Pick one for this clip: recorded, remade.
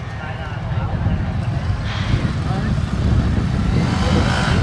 recorded